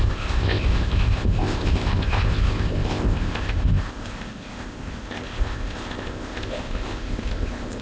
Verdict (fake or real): fake